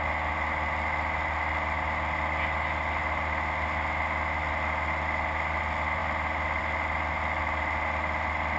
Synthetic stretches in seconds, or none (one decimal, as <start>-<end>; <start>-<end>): none

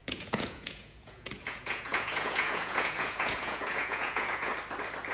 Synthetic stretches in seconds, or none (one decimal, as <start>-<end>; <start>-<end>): 0.0-4.5

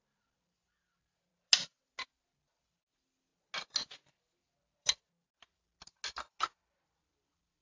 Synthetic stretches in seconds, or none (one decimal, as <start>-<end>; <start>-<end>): 0.0-1.3; 2.4-3.3; 7.0-7.6

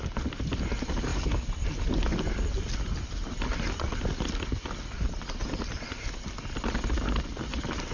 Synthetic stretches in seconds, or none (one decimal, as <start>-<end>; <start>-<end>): none

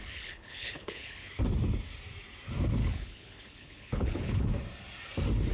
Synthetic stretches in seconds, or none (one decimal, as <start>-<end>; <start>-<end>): 0.0-1.4; 2.8-4.5

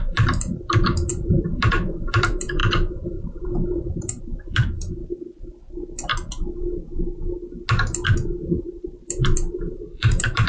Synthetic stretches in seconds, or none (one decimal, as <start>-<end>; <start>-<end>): 0.0-5.0; 8.6-10.5

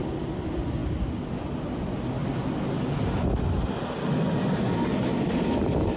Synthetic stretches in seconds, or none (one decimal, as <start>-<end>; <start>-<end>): none